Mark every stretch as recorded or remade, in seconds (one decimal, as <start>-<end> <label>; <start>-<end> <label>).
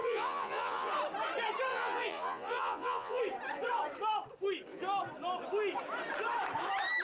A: 0.0-0.9 remade; 0.9-1.7 recorded; 1.7-3.2 remade; 3.2-7.0 recorded